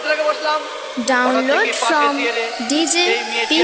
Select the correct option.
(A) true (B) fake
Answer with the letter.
A